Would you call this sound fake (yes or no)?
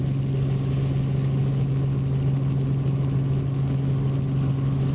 no